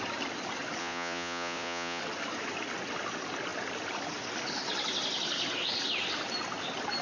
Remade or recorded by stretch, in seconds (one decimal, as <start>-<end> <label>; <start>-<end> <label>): 0.0-0.8 recorded; 0.8-2.0 remade; 2.0-7.0 recorded

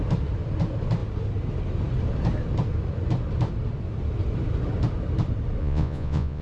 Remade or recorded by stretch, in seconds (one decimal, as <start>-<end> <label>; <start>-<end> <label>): 0.0-5.6 recorded; 5.6-6.4 remade

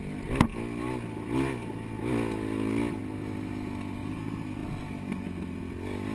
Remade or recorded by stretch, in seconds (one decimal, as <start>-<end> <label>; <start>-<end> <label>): 0.0-6.1 recorded

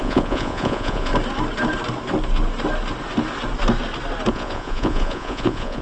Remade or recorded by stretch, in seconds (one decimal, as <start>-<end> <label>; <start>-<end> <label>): 0.0-1.1 remade; 1.1-4.3 recorded; 4.3-5.8 remade

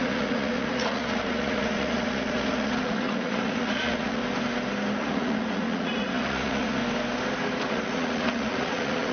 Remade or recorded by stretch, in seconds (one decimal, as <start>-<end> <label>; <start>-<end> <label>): 0.0-4.2 remade; 4.2-5.0 recorded; 5.0-6.8 remade; 6.8-7.7 recorded; 7.7-9.1 remade